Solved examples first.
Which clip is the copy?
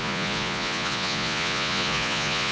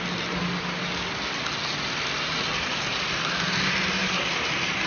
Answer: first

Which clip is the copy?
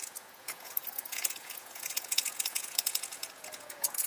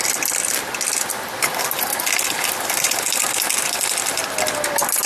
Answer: first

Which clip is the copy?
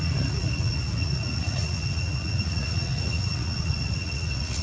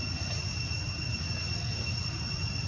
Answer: first